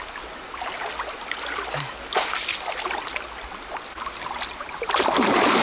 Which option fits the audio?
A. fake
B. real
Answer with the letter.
B